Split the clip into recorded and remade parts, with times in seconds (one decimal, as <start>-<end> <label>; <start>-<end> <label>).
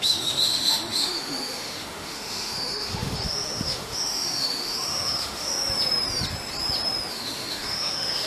0.0-5.5 remade; 5.5-7.1 recorded; 7.1-8.3 remade